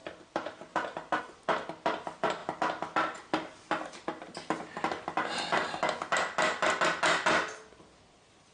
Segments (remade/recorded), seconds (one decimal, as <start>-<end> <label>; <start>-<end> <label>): 0.0-1.2 remade; 1.2-8.5 recorded